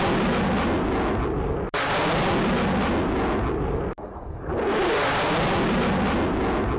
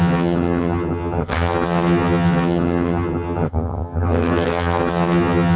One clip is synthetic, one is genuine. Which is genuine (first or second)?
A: first